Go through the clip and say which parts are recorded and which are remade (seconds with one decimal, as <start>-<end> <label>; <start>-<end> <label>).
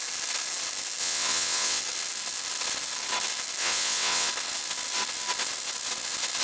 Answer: 0.0-1.0 recorded; 1.0-1.8 remade; 1.8-3.6 recorded; 3.6-4.3 remade; 4.3-6.4 recorded